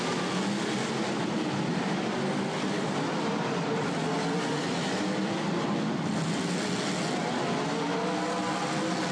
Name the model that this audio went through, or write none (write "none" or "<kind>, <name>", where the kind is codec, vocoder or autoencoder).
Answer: none